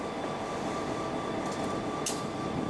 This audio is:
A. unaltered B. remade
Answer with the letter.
A